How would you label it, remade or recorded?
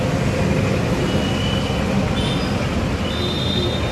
recorded